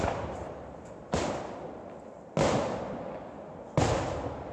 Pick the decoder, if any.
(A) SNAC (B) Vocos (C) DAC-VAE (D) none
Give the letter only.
D